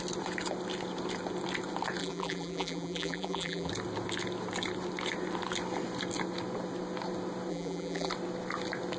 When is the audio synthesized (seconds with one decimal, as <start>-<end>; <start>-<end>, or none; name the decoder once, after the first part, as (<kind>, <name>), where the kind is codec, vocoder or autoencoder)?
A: 2.0-3.7 (vocoder, BigVGAN v2); 7.5-8.1

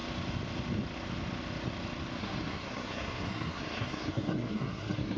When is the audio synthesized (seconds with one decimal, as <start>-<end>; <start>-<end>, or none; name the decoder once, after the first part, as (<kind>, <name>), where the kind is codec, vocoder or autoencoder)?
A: 2.2-5.2 (codec, SNAC)

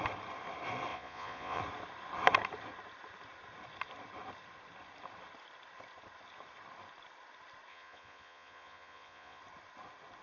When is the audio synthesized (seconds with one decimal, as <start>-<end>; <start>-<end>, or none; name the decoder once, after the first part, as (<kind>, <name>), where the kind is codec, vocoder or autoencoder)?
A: 0.9-1.6 (vocoder, Vocos); 7.7-9.4

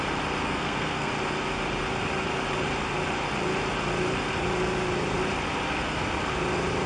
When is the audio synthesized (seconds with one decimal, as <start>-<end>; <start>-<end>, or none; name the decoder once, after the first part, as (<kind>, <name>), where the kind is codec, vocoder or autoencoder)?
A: 0.4-1.1 (codec, SNAC)

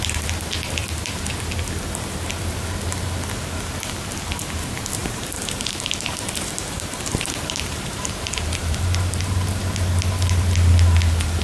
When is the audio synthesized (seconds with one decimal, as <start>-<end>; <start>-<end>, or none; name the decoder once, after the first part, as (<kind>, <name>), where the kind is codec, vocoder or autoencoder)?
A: 5.0-9.3 (vocoder, BigVGAN v2)